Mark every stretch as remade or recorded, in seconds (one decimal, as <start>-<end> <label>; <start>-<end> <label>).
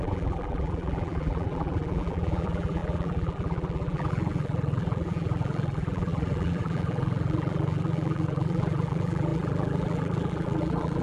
0.0-11.0 remade